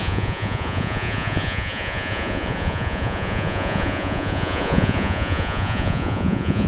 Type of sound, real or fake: fake